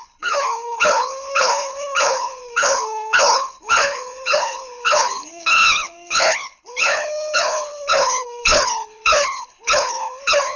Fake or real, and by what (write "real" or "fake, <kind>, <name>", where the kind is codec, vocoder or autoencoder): fake, codec, HILCodec